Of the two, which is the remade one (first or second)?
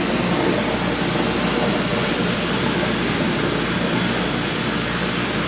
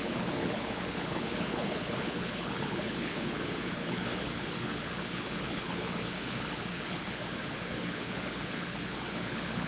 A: second